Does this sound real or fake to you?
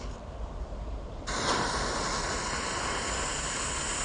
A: real